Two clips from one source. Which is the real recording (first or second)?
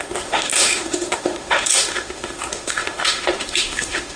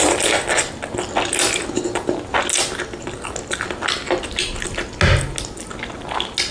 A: second